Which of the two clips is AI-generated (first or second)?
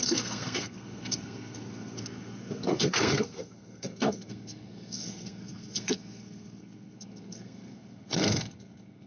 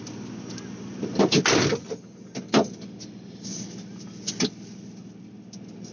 first